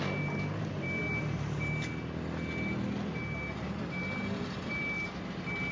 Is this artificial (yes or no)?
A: no